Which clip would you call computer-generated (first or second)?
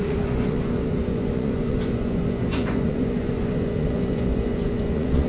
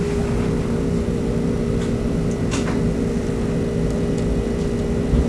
first